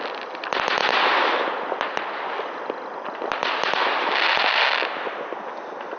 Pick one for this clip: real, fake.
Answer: real